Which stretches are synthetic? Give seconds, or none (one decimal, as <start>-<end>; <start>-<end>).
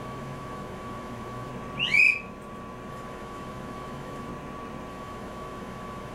0.0-1.5; 2.9-4.3; 4.9-6.1